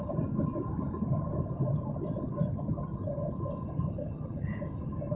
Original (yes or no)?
yes